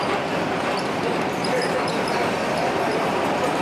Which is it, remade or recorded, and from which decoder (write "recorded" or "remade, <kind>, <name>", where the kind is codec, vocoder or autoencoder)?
recorded